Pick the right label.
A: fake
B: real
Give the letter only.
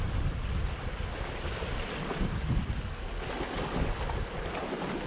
B